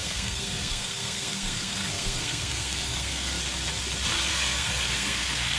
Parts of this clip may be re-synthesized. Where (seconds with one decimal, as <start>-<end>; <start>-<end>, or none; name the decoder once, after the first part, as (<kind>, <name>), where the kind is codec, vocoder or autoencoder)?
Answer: 0.0-3.4 (codec, SNAC); 4.3-5.6